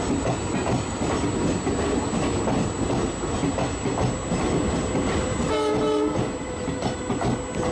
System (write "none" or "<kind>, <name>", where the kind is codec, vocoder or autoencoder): none